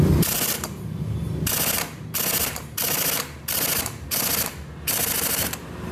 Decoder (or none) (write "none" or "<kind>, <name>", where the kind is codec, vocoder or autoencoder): none